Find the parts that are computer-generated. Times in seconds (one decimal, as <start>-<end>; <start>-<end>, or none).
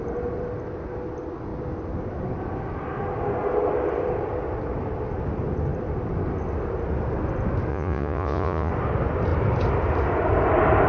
7.7-8.7